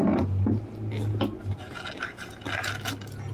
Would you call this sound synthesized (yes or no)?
no